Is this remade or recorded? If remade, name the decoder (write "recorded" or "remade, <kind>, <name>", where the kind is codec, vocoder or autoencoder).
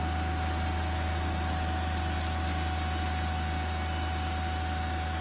recorded